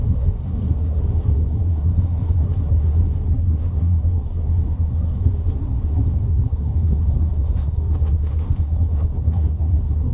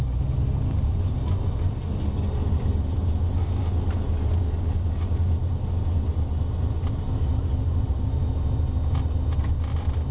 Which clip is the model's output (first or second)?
first